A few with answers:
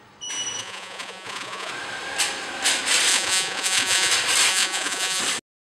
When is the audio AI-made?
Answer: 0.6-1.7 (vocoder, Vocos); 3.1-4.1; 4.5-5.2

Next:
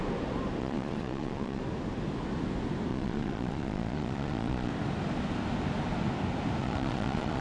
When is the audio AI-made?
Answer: 0.6-1.6 (vocoder, Vocos); 2.9-4.7; 6.6-7.4

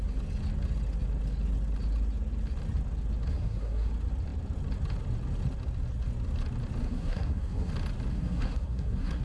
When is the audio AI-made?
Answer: 3.3-3.9 (codec, SNAC); 6.8-7.7; 8.1-9.2

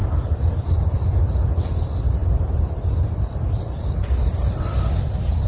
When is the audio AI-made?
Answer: 0.0-0.6 (vocoder, BigVGAN v2); 2.2-5.1

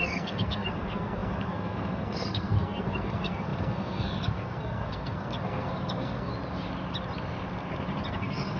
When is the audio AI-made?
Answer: 0.0-6.3 (codec, SNAC); 8.1-8.6

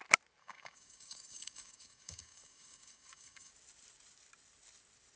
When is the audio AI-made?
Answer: 0.4-3.5 (codec, DAC)

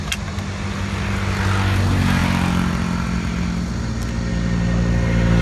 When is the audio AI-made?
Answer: none